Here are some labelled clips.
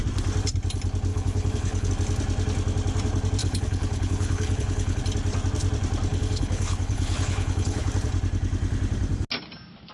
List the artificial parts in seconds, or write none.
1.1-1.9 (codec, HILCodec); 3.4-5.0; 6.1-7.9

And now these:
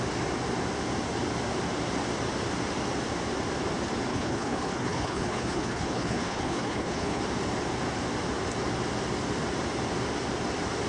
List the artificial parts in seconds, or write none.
4.1-7.2 (codec, HILCodec)

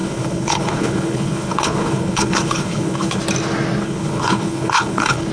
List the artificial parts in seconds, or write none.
0.0-3.2 (codec, HILCodec); 3.8-5.3

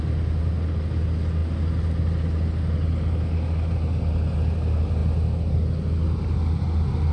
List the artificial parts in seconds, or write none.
none

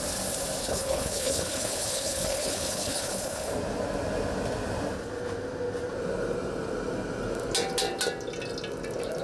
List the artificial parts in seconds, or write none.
0.6-3.5 (codec, HILCodec)

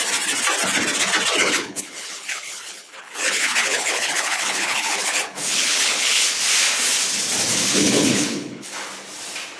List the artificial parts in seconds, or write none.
1.4-6.4 (codec, HILCodec); 7.5-8.9